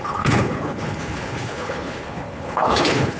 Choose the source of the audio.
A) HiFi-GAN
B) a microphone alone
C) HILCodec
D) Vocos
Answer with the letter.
C